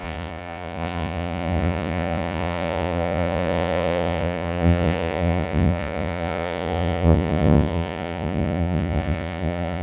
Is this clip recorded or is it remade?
remade